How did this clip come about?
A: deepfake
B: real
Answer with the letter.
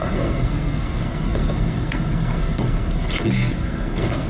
A